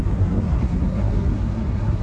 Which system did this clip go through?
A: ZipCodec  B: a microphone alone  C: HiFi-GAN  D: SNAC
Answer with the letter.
D